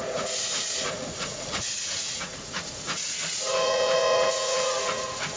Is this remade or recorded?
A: remade